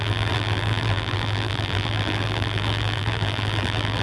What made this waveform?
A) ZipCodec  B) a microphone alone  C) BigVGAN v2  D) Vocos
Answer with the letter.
C